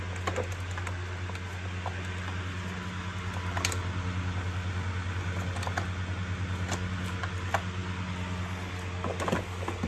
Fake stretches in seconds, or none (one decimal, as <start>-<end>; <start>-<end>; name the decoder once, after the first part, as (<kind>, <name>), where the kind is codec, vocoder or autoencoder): none